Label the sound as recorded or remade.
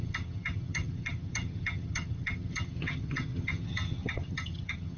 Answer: remade